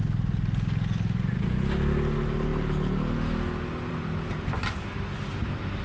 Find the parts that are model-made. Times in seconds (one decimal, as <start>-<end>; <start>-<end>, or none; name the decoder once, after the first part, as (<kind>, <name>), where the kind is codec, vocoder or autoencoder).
none